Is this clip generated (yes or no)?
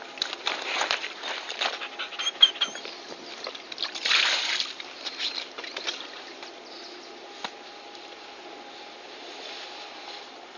no